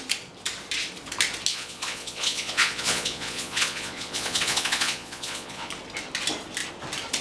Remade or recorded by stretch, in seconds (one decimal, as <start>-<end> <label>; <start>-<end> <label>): 0.0-1.5 recorded; 1.5-5.7 remade; 5.7-7.2 recorded